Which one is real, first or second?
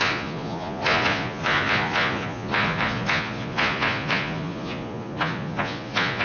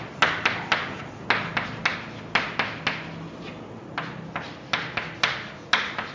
second